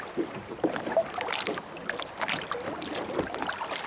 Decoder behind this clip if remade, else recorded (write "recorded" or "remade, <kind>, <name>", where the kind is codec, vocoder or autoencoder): recorded